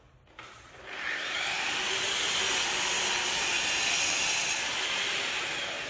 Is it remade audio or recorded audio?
recorded